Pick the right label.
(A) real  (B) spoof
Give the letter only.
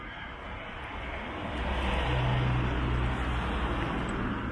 A